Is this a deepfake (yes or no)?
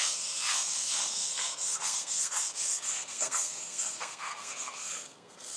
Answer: yes